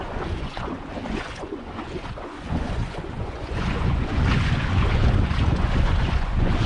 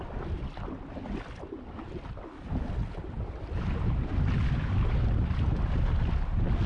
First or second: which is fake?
first